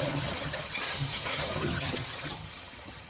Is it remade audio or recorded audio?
remade